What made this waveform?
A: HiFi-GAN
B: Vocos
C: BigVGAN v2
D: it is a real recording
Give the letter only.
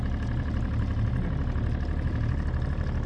D